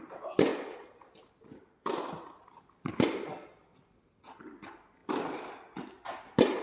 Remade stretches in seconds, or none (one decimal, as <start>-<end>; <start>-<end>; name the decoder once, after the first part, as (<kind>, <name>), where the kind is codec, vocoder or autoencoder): none